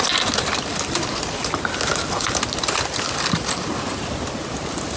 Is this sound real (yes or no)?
yes